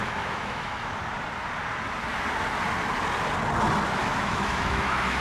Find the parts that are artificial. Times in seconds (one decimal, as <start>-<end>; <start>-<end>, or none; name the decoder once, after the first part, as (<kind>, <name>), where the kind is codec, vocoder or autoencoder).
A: 0.0-0.9 (autoencoder, DAC-VAE); 4.0-5.2